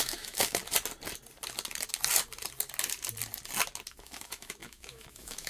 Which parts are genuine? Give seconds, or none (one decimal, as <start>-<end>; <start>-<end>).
0.6-3.9